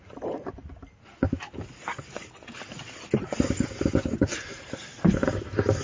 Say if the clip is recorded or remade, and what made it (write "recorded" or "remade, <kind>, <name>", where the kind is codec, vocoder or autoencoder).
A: recorded